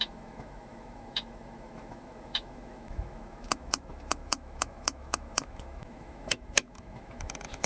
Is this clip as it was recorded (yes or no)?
no